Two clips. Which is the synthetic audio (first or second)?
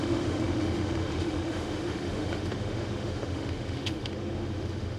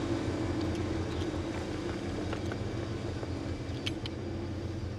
first